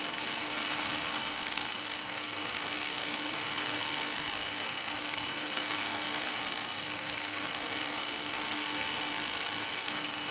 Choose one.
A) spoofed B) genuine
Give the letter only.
A